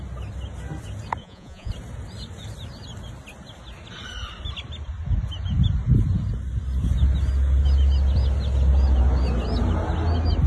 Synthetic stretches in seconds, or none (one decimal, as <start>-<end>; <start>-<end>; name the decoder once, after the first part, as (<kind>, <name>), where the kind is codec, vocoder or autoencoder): 1.2-1.7 (vocoder, Vocos)